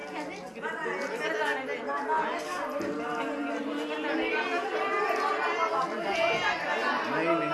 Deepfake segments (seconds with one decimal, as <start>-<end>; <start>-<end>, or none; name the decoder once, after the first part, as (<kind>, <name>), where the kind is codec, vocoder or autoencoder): none